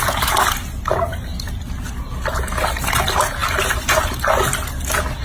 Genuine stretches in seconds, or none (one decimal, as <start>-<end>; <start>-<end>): 0.0-5.2